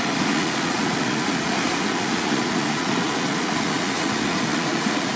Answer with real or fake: fake